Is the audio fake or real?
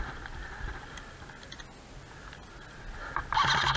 real